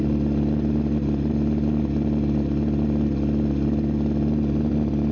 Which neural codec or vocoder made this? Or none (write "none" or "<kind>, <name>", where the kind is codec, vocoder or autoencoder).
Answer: none